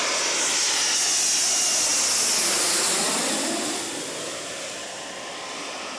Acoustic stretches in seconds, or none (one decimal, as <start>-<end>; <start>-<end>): 0.0-6.0